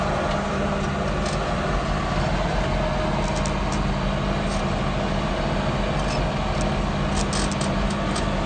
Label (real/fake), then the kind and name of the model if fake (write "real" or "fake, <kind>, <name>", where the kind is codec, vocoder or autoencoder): real